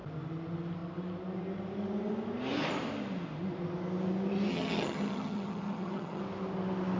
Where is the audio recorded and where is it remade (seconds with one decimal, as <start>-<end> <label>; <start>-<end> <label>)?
0.0-4.5 recorded; 4.5-6.2 remade; 6.2-7.0 recorded